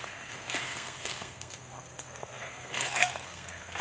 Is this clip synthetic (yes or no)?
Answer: yes